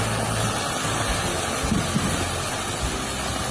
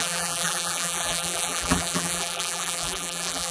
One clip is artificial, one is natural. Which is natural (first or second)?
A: first